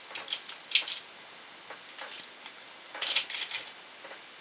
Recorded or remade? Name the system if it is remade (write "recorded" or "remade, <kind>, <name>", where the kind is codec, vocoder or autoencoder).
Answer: recorded